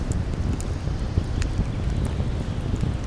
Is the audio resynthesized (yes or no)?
no